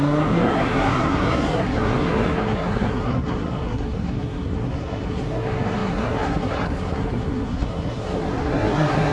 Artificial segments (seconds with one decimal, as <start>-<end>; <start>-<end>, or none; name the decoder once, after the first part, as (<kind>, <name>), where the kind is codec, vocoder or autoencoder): 0.0-9.1 (codec, SNAC)